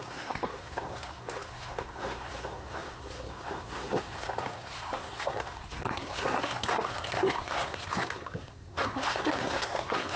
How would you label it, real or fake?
fake